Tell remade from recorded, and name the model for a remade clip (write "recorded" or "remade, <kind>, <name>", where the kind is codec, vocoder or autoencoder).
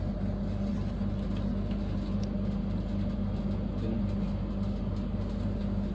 recorded